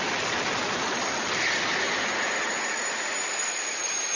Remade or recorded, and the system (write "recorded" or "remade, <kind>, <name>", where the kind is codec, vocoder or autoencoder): remade, vocoder, BigVGAN v2